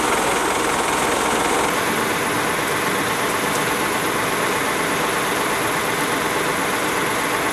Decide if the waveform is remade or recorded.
recorded